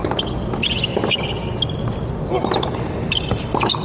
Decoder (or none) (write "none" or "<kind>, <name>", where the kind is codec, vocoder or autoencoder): none